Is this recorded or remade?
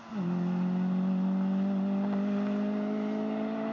recorded